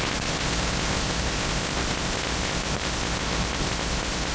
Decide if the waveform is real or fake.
fake